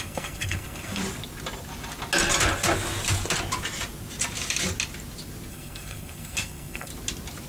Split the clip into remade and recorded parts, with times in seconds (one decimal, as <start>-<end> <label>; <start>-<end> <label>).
0.0-1.0 remade; 1.0-5.5 recorded; 5.5-6.9 remade; 6.9-7.5 recorded

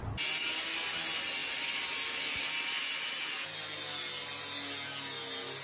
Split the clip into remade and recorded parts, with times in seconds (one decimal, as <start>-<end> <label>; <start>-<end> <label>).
0.0-5.6 recorded

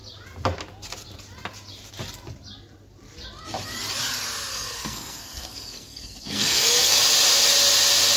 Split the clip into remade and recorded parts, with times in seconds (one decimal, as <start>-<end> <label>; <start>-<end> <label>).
0.0-4.5 recorded; 4.5-7.0 remade; 7.0-8.2 recorded

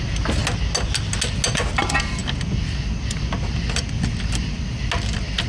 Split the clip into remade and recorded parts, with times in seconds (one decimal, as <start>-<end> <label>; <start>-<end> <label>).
0.0-5.5 recorded

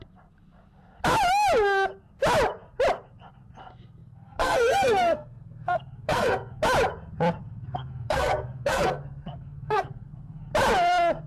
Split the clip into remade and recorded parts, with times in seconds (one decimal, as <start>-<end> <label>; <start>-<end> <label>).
0.0-4.0 recorded; 4.0-6.6 remade; 6.6-7.4 recorded; 7.4-10.5 remade; 10.5-11.3 recorded

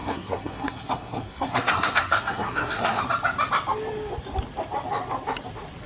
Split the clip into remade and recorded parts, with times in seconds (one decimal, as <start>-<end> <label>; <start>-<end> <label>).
0.0-3.0 remade; 3.0-5.9 recorded

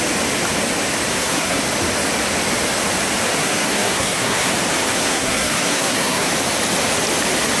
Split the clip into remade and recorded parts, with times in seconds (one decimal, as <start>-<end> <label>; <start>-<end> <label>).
0.0-1.1 recorded; 1.1-1.6 remade; 1.6-3.4 recorded; 3.4-4.5 remade; 4.5-4.9 recorded; 4.9-6.3 remade; 6.3-7.6 recorded